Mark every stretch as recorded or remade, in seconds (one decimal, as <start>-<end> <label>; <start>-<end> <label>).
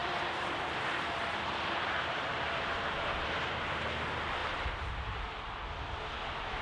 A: 0.0-3.6 remade; 3.6-4.4 recorded; 4.4-4.9 remade; 4.9-6.6 recorded